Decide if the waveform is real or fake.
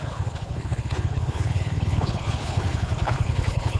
fake